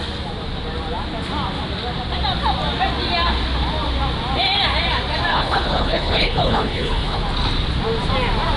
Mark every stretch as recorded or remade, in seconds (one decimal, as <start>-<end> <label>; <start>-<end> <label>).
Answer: 0.0-5.3 recorded; 5.3-7.2 remade; 7.2-8.6 recorded